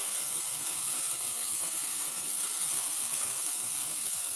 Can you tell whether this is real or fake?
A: fake